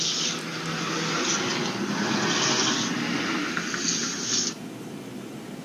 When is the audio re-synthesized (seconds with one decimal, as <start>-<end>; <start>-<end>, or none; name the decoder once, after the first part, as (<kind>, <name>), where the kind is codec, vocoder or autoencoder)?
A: none